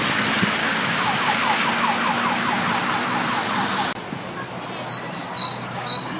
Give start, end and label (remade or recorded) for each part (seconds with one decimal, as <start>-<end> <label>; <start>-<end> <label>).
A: 0.0-0.6 recorded; 0.6-1.7 remade; 1.7-5.4 recorded; 5.4-6.2 remade